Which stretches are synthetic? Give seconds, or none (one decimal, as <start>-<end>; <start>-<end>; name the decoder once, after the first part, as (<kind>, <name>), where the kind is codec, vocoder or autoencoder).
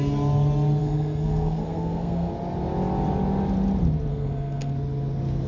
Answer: 0.8-2.3 (codec, SNAC); 4.1-4.7